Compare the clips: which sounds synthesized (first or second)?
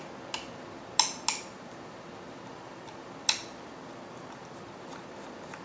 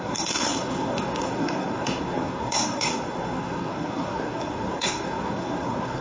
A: second